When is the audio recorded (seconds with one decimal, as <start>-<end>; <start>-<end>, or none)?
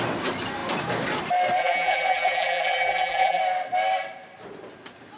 0.0-1.6; 3.4-5.2